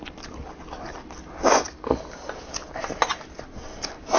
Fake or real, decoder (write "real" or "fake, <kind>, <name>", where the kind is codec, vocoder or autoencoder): real